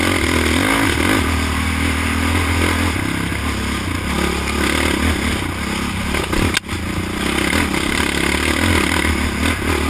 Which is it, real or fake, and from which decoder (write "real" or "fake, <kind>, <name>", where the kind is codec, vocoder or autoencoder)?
real